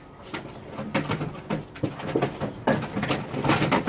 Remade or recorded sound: recorded